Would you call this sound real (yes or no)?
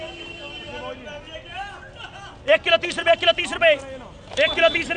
yes